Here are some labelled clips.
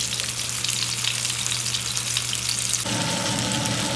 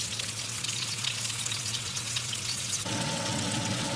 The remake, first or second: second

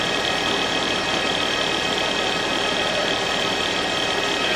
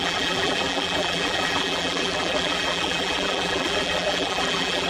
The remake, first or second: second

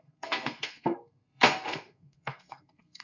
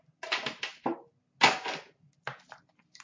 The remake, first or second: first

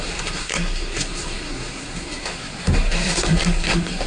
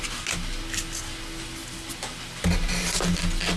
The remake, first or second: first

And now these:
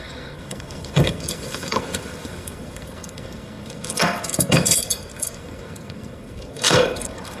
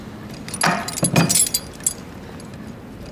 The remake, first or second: first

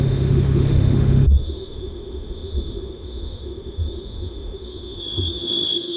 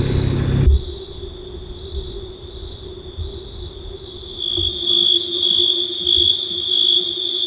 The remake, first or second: first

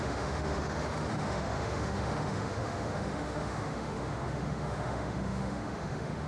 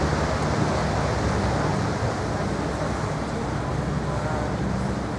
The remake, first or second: first